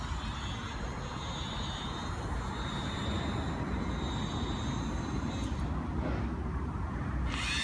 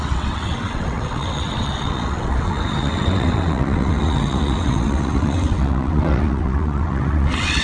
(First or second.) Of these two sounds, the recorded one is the first